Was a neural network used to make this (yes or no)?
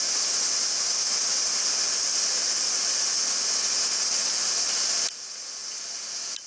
no